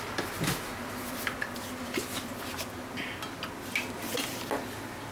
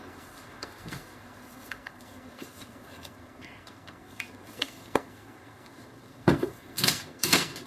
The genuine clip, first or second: first